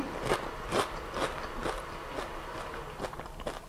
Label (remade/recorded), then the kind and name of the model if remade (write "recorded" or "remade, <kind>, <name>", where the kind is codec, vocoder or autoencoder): recorded